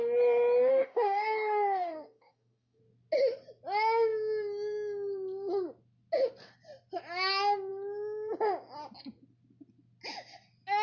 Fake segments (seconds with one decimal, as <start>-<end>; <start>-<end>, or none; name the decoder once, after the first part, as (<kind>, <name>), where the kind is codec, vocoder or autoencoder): 0.7-2.8 (codec, DAC)